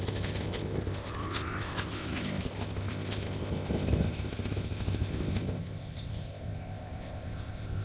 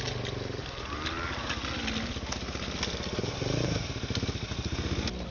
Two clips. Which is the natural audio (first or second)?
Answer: second